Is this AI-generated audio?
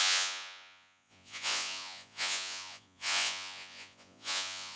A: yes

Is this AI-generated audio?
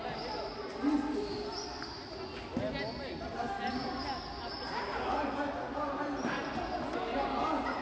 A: no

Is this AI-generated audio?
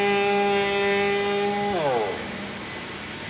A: no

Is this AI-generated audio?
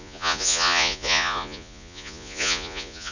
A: yes